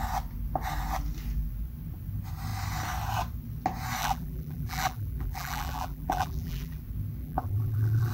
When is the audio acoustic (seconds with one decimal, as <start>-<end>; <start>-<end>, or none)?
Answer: 0.0-4.0; 6.8-7.2